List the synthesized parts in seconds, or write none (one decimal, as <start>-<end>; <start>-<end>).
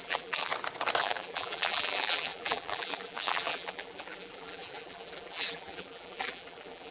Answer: 0.0-0.5; 1.0-6.9